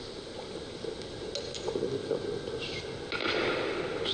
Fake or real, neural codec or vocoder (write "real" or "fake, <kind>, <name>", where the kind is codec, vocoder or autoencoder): real